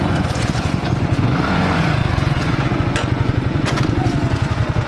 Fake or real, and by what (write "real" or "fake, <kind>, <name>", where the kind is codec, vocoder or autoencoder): fake, vocoder, Vocos